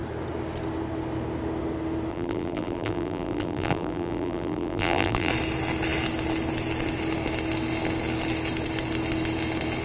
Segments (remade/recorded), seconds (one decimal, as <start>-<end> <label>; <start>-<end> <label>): 0.0-2.1 recorded; 2.1-5.3 remade; 5.3-9.8 recorded